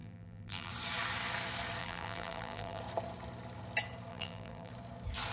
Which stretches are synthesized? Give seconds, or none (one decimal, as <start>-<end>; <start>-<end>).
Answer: 0.0-0.7; 1.8-2.8; 4.1-4.7